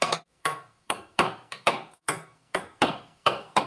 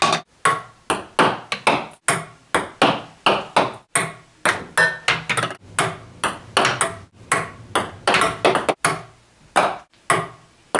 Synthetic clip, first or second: first